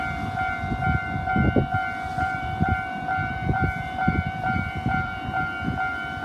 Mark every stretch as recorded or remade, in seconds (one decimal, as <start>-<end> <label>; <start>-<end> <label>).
0.0-2.1 recorded; 2.1-5.4 remade; 5.4-6.2 recorded